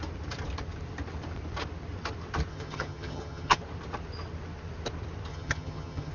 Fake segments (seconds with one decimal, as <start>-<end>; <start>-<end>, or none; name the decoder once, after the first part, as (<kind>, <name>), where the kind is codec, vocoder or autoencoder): 2.5-3.6 (vocoder, HiFi-GAN); 5.3-6.1